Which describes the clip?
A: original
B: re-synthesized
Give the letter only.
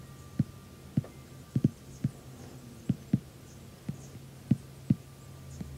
A